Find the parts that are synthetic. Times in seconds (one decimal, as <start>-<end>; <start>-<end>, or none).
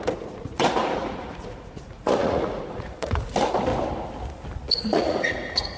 0.0-3.7; 4.7-5.8